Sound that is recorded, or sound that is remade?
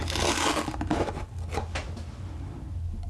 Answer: recorded